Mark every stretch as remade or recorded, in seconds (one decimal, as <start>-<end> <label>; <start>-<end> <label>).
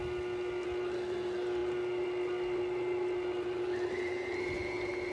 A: 0.0-5.1 recorded